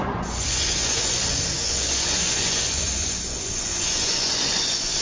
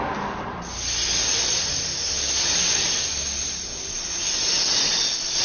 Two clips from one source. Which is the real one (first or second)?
second